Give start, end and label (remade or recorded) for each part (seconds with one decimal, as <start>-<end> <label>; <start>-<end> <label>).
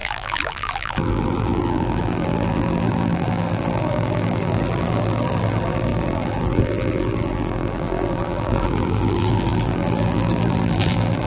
0.0-11.3 remade